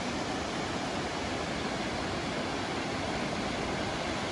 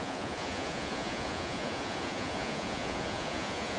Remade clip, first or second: second